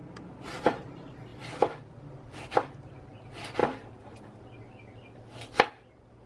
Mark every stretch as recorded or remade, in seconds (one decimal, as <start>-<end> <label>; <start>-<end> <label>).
0.0-0.7 remade; 0.7-1.3 recorded; 1.3-2.9 remade; 2.9-6.3 recorded